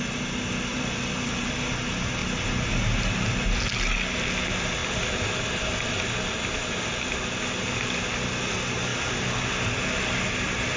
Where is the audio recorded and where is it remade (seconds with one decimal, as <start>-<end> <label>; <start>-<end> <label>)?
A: 0.0-0.7 recorded; 0.7-1.7 remade; 1.7-8.9 recorded; 8.9-9.5 remade; 9.5-10.8 recorded